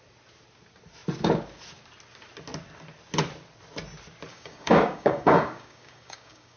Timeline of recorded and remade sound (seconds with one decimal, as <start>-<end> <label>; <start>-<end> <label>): 0.0-4.3 recorded; 4.3-6.6 remade